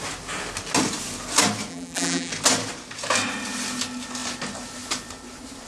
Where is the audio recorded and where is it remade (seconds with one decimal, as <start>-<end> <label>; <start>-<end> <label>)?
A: 0.0-1.7 recorded; 1.7-2.3 remade; 2.3-5.7 recorded